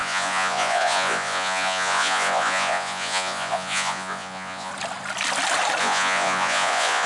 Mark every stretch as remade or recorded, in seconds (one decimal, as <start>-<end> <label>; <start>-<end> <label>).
0.0-4.7 remade; 4.7-5.8 recorded; 5.8-7.1 remade